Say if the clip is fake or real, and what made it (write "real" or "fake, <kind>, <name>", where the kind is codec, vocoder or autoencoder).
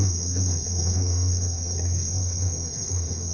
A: fake, codec, SNAC